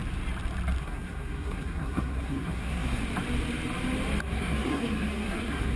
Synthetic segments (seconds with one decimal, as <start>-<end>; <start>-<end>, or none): 0.8-3.0; 4.2-5.8